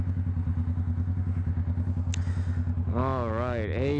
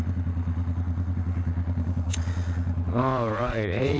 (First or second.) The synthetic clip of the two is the second